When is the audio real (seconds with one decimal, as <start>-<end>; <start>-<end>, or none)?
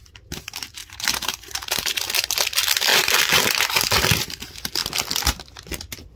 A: 0.0-0.8; 1.9-2.9; 3.5-6.2